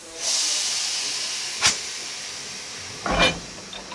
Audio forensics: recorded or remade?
recorded